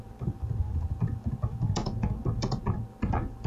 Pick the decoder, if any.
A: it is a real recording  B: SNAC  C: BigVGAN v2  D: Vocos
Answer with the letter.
A